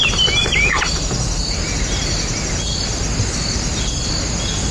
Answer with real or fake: real